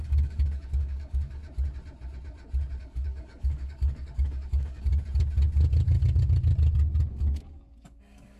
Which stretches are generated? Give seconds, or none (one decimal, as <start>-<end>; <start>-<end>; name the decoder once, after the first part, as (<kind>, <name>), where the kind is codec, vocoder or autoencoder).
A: 0.0-1.4 (codec, DAC); 2.8-4.9; 7.1-8.4